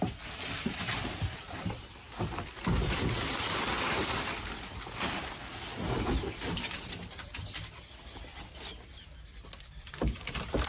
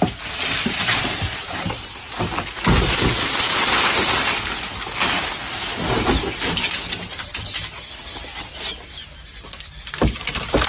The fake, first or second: first